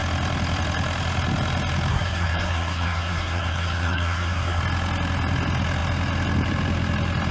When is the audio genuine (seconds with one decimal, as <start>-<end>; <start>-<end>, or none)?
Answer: 0.0-1.9; 4.6-7.3